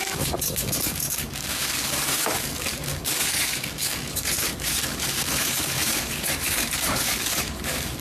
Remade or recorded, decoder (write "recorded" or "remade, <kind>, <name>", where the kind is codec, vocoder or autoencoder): remade, codec, DAC